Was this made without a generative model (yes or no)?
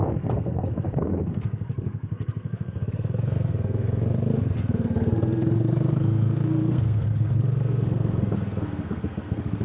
no